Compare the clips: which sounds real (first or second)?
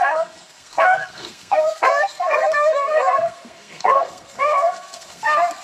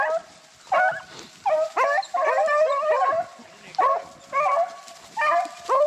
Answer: second